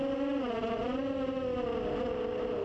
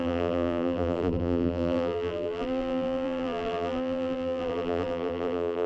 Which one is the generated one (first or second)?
second